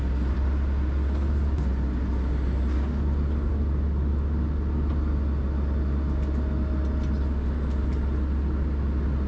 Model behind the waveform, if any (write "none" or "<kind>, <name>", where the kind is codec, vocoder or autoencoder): none